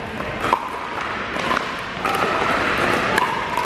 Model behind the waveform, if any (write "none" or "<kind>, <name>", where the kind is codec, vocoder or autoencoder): none